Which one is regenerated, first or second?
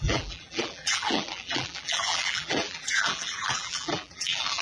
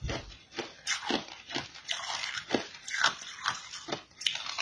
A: first